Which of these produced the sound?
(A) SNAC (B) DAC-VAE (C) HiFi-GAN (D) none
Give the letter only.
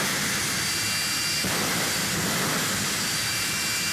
D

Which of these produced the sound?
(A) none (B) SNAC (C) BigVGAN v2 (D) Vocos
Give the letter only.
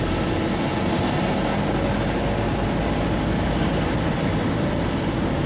A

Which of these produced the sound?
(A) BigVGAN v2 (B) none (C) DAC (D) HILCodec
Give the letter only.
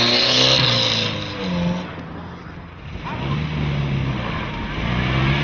B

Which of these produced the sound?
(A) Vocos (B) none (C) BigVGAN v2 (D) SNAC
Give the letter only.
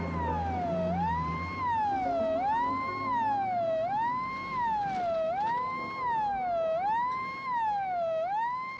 B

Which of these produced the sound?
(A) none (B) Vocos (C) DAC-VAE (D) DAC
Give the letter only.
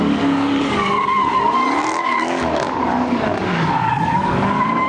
D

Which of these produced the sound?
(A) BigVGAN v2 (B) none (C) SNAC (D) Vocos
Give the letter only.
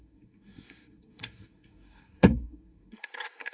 C